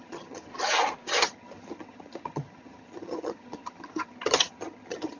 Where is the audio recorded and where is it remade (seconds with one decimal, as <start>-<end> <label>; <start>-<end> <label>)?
0.0-0.5 remade; 0.5-1.2 recorded; 1.2-5.2 remade